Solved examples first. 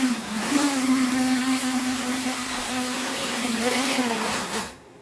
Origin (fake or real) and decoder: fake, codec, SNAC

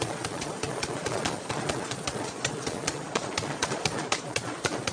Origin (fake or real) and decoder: fake, vocoder, Vocos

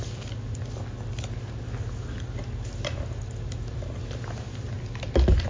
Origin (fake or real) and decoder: real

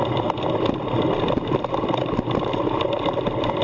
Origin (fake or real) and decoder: real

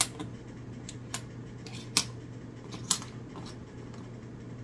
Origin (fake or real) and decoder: real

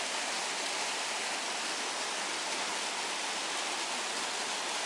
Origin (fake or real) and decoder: real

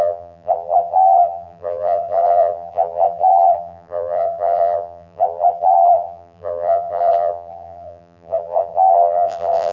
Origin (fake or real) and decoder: fake, vocoder, BigVGAN v2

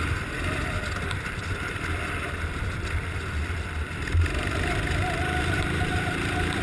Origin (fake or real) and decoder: real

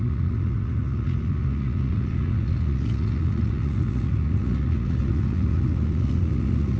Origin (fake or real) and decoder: fake, vocoder, Vocos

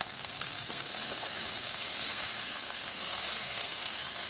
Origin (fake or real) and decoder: fake, codec, SNAC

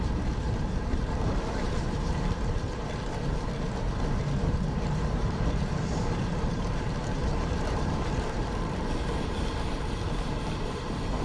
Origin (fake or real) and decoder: fake, vocoder, BigVGAN v2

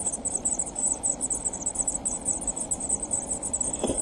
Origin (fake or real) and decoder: real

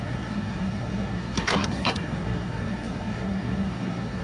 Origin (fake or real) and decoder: fake, codec, SNAC